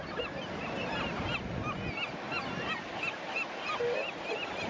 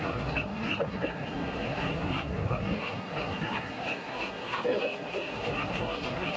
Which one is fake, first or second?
second